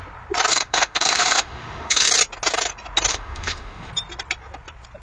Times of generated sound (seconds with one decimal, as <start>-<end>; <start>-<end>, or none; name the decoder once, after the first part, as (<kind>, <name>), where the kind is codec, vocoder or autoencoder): 0.5-2.1 (autoencoder, DAC-VAE); 3.1-3.9